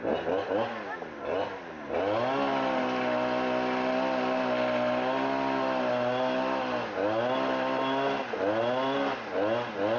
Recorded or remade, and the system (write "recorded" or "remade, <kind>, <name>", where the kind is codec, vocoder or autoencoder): recorded